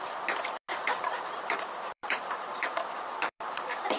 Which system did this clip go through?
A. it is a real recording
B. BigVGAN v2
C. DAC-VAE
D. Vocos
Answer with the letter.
B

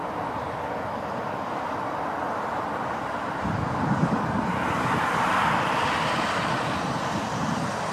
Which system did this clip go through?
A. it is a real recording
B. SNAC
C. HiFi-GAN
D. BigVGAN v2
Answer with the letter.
D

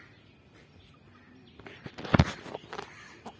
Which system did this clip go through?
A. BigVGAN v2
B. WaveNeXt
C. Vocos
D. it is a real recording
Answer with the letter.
A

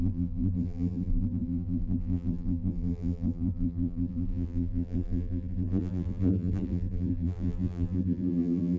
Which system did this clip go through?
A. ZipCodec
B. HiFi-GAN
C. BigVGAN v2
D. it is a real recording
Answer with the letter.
C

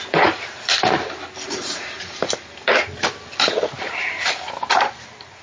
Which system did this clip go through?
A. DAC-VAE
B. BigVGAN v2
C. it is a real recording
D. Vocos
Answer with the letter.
B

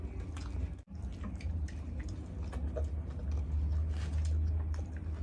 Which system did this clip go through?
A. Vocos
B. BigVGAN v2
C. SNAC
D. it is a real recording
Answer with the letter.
D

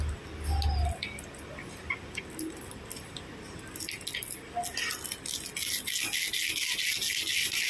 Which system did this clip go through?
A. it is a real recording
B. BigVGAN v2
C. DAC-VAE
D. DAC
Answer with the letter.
A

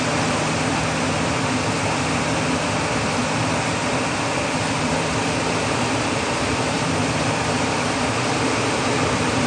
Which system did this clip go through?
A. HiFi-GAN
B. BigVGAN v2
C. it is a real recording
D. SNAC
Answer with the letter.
B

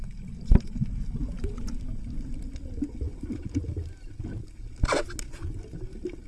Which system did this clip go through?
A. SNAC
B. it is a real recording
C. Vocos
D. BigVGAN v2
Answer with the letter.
B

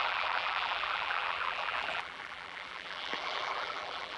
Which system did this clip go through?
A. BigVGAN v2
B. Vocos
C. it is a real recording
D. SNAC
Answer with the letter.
A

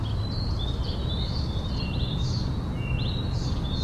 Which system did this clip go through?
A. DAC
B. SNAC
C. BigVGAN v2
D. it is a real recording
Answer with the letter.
D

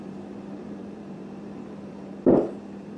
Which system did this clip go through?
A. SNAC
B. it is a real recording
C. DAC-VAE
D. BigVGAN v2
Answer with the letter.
D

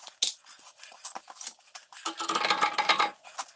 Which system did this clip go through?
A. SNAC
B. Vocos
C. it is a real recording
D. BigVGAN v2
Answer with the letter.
C